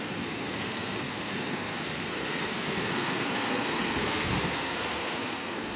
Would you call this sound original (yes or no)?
no